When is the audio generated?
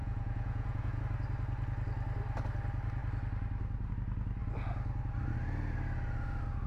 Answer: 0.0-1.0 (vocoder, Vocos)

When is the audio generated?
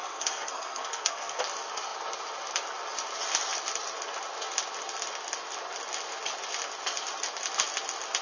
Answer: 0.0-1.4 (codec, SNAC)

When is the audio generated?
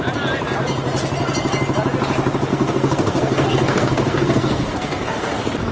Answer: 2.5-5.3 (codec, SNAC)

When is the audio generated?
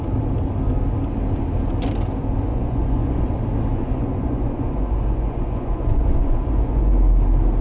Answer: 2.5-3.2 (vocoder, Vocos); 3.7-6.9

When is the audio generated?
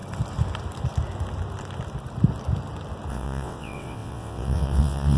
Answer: 3.1-5.2 (vocoder, WaveNeXt)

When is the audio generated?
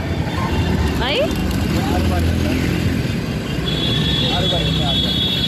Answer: none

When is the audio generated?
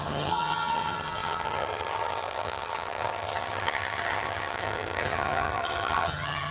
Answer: 0.0-6.5 (vocoder, HiFi-GAN)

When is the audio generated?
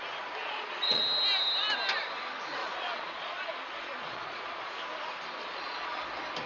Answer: 0.4-1.0 (vocoder, Vocos); 2.6-4.8; 5.4-6.0